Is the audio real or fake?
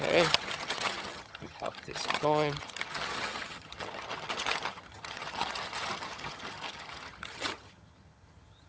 fake